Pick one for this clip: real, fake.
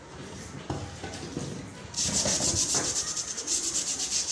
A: real